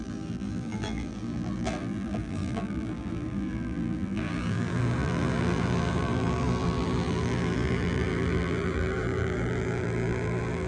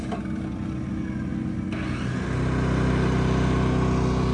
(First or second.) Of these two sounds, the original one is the second